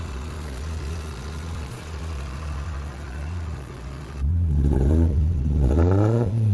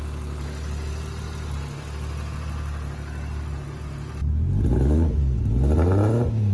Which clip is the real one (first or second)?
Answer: second